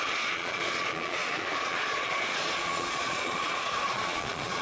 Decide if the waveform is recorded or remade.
remade